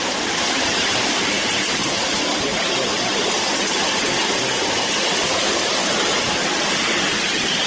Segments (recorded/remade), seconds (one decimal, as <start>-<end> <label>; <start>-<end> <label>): 0.0-7.7 recorded